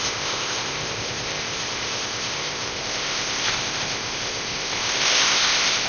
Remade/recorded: remade